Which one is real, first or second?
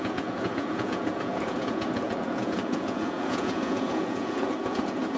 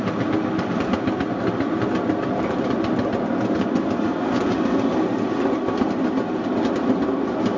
second